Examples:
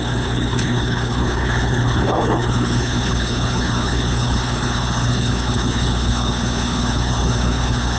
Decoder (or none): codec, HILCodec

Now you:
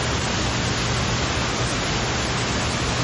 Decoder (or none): none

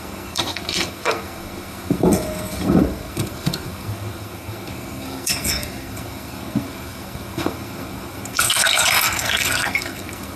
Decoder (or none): codec, SNAC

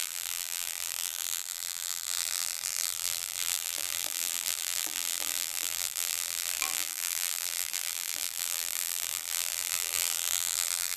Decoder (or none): vocoder, BigVGAN v2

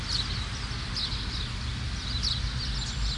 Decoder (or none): none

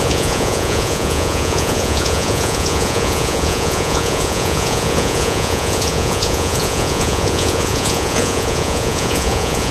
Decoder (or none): vocoder, Vocos